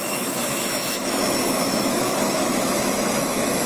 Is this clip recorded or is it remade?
remade